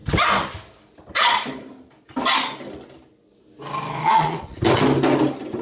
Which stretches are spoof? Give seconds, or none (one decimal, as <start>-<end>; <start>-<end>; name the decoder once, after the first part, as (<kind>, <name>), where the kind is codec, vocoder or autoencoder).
4.0-4.8 (vocoder, Vocos)